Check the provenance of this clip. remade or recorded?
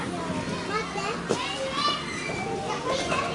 recorded